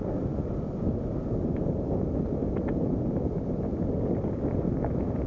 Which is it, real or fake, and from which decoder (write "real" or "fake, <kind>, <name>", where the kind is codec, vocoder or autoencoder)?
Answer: real